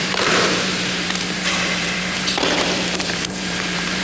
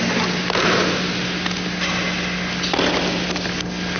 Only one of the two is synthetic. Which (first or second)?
first